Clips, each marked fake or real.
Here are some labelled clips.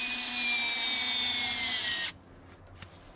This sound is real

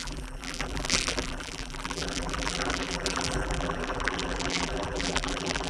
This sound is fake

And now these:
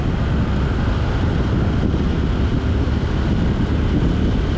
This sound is real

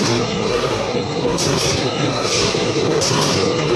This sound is fake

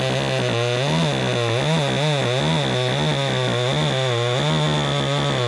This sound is real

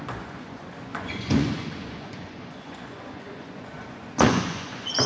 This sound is fake